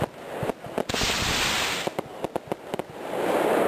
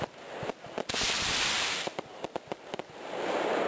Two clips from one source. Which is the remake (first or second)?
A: second